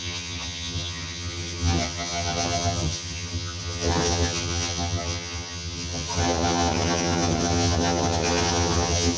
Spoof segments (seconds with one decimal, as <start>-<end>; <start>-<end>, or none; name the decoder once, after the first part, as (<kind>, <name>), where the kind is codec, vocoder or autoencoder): 0.0-9.2 (vocoder, HiFi-GAN)

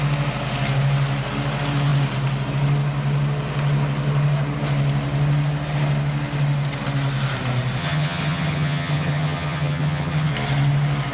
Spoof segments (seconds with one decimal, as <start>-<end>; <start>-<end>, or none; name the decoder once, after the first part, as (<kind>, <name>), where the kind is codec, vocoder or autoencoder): 7.8-10.3 (vocoder, HiFi-GAN)

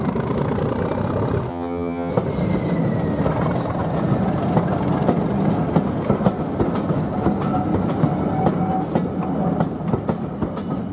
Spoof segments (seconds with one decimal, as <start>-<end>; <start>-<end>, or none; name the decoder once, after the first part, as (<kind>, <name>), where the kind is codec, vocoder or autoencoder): 1.5-2.1 (vocoder, HiFi-GAN)

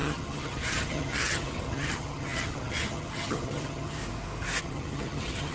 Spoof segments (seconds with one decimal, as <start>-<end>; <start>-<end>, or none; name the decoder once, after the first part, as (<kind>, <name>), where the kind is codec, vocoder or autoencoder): 0.0-4.0 (vocoder, HiFi-GAN); 4.6-5.5

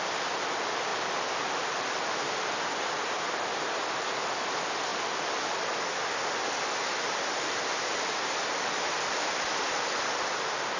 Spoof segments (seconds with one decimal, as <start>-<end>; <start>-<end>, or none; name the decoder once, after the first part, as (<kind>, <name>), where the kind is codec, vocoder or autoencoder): none

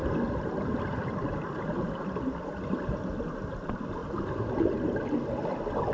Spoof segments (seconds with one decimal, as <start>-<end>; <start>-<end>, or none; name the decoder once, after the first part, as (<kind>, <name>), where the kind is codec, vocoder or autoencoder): none

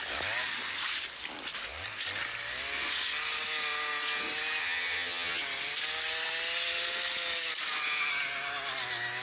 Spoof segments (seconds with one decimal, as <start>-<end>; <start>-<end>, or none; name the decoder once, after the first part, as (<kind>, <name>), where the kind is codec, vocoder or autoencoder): 4.6-5.4 (vocoder, HiFi-GAN)